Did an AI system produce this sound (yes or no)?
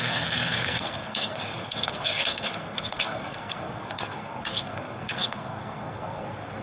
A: yes